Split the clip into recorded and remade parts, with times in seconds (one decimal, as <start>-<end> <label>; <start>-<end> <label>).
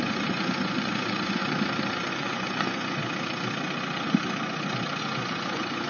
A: 0.0-1.4 remade; 1.4-2.1 recorded; 2.1-3.0 remade; 3.0-5.0 recorded; 5.0-5.9 remade